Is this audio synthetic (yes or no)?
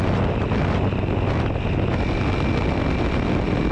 no